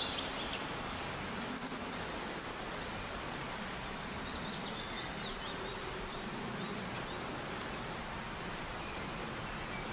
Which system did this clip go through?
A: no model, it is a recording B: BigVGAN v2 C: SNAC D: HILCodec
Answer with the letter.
A